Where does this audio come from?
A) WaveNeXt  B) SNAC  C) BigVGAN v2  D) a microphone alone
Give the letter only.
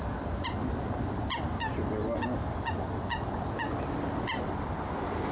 D